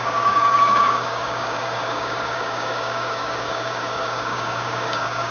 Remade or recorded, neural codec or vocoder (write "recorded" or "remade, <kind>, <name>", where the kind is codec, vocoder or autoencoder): remade, codec, DAC